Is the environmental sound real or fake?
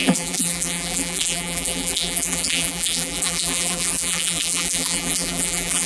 fake